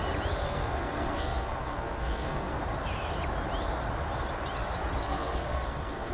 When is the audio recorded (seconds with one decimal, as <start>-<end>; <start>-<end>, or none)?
0.0-0.4; 2.6-5.0